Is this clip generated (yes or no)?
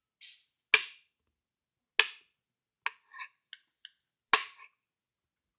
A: no